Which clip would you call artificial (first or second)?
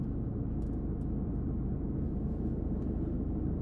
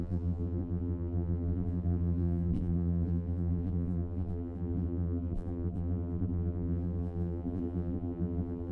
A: second